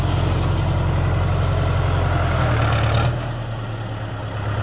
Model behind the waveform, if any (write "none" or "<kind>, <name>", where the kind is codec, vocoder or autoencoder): none